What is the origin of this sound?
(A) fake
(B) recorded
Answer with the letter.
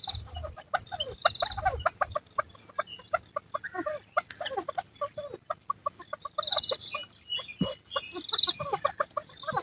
B